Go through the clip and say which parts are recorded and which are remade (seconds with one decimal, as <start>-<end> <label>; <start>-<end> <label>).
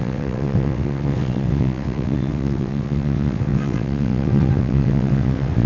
0.0-5.7 remade